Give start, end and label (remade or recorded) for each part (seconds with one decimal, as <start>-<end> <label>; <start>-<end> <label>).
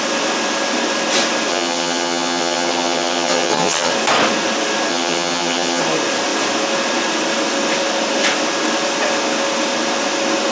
0.0-1.5 recorded; 1.5-3.9 remade; 3.9-4.9 recorded; 4.9-5.8 remade; 5.8-10.5 recorded